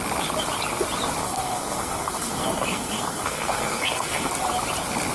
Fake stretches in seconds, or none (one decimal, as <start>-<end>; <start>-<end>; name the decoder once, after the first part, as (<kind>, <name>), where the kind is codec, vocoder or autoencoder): 1.2-4.3 (codec, SNAC)